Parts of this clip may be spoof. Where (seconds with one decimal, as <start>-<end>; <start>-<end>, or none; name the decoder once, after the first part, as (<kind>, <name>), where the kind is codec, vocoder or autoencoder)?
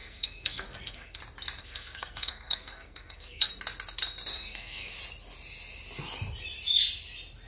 0.0-1.2 (codec, SNAC); 1.6-3.5; 4.3-4.9